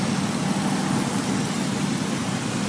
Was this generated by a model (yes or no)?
no